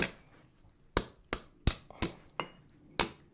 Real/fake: real